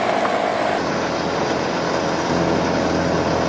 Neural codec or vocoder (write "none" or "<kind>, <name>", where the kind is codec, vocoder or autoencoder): none